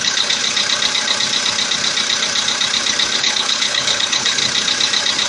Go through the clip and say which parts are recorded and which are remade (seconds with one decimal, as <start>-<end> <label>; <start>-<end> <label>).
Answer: 0.0-0.4 remade; 0.4-3.2 recorded; 3.2-4.4 remade; 4.4-5.3 recorded